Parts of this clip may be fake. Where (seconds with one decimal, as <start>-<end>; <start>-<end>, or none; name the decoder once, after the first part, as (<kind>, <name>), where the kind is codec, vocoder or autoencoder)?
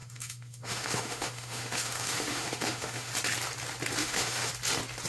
0.0-3.1 (autoencoder, DAC-VAE); 4.0-4.5